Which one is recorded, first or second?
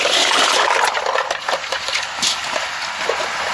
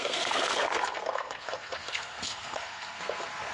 first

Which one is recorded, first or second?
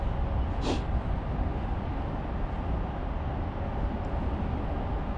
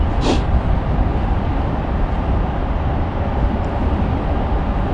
first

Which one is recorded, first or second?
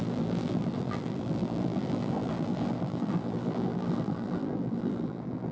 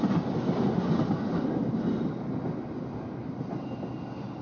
second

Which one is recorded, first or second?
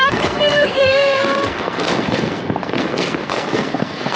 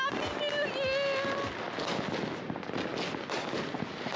second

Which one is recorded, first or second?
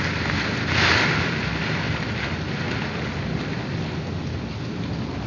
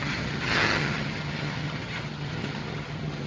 first